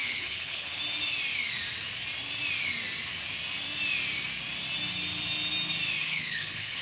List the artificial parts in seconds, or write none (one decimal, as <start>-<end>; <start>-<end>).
0.0-0.8; 6.0-6.8